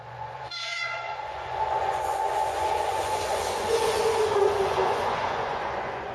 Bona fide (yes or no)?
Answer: no